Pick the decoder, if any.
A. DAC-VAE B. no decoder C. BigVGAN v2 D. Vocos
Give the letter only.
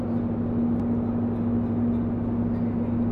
B